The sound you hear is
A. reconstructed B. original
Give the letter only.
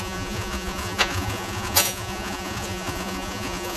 A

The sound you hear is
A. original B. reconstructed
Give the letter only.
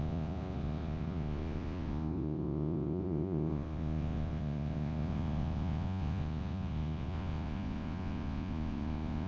B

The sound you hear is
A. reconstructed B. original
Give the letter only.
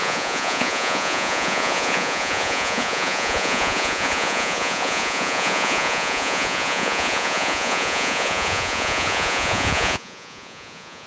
A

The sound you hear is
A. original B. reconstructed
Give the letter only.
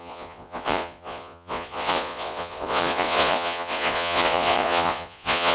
B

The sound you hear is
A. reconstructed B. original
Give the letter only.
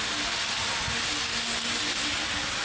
B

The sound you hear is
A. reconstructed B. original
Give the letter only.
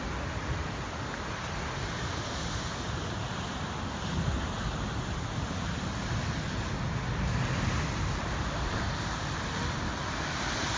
B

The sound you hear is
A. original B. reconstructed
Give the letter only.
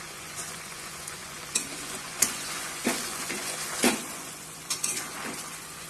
B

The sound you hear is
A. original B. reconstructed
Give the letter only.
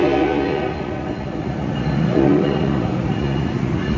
B